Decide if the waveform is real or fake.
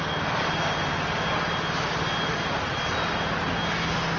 real